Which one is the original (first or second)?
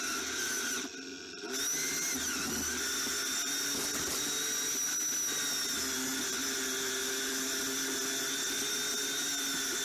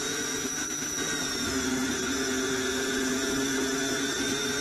first